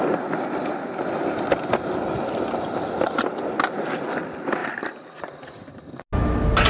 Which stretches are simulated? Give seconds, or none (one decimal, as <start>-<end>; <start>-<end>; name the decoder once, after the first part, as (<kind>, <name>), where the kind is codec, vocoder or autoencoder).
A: 4.6-5.9 (vocoder, BigVGAN v2)